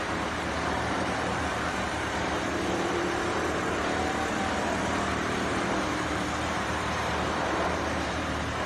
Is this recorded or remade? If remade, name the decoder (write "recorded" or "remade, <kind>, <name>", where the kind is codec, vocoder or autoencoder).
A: remade, vocoder, BigVGAN v2